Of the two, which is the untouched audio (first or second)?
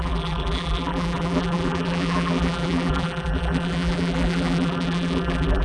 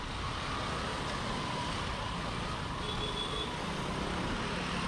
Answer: second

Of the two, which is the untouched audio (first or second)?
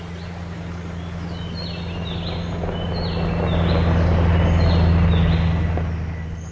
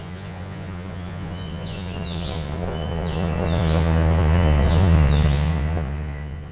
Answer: first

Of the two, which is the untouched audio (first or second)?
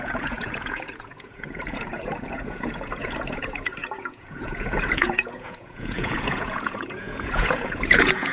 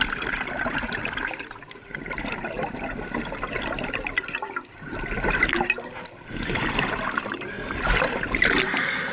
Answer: second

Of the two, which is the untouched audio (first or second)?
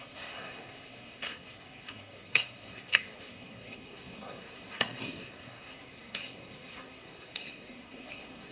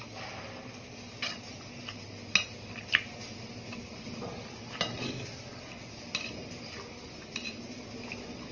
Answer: second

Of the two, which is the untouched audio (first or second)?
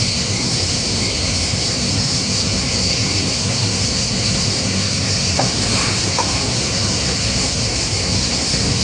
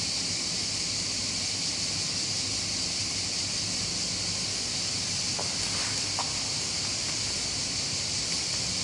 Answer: second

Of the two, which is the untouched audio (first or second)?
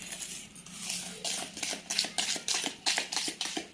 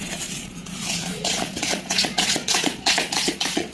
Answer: first